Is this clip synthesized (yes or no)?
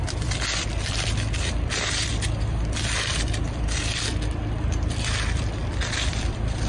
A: yes